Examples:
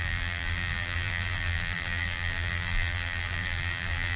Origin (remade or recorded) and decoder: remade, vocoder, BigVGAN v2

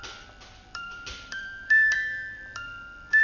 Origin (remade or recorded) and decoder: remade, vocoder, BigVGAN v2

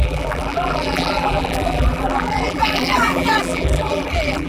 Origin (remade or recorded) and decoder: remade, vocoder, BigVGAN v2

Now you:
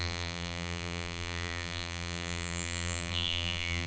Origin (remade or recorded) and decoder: remade, vocoder, BigVGAN v2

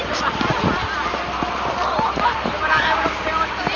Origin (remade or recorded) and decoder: remade, vocoder, BigVGAN v2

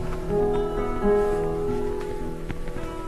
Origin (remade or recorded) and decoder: recorded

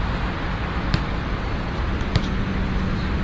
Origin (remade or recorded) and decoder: remade, vocoder, BigVGAN v2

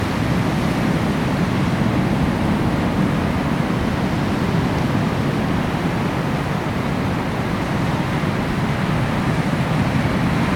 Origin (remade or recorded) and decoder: recorded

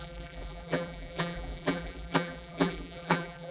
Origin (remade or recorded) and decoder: remade, vocoder, BigVGAN v2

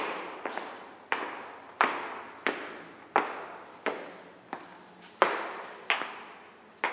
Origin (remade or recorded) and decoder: recorded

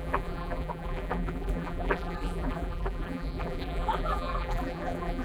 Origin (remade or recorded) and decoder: remade, vocoder, BigVGAN v2